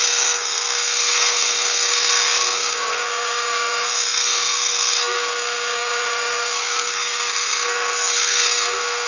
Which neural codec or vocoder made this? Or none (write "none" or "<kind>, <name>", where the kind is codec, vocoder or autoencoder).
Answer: codec, SNAC